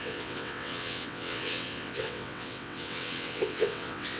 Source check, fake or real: fake